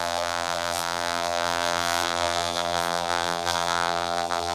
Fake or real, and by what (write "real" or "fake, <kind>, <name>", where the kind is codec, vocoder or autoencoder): fake, vocoder, BigVGAN v2